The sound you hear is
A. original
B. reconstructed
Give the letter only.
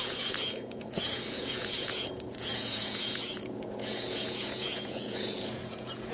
B